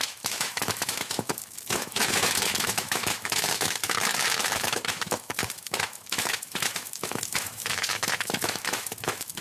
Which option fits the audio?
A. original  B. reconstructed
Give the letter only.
B